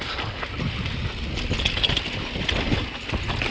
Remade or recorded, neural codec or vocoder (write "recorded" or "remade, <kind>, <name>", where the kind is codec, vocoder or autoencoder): recorded